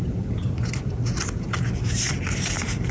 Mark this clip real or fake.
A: real